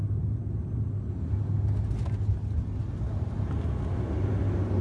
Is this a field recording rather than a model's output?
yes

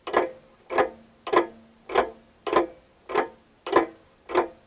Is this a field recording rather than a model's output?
yes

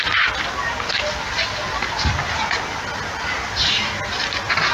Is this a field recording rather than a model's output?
yes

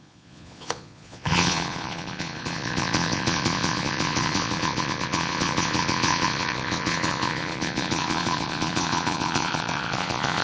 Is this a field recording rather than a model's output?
no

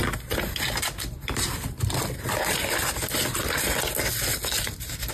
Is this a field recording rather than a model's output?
yes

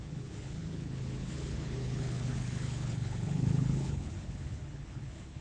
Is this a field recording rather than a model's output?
no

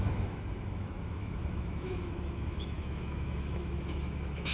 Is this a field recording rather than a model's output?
no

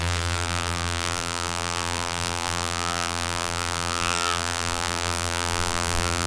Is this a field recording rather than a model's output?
no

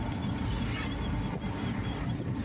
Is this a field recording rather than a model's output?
yes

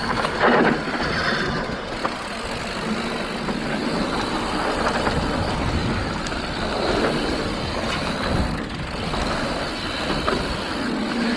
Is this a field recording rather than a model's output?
yes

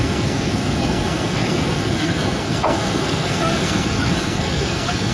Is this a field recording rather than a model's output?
no